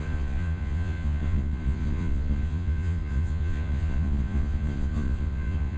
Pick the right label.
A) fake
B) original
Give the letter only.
A